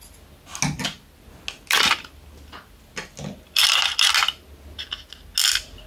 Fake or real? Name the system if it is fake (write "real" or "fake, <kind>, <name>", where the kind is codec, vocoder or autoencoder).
real